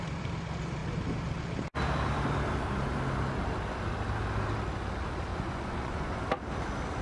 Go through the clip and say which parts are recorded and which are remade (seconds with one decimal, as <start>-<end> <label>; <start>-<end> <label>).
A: 0.0-5.3 recorded; 5.3-6.2 remade; 6.2-7.0 recorded